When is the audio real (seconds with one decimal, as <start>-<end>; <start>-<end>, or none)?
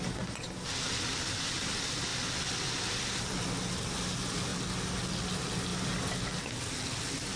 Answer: 0.0-7.4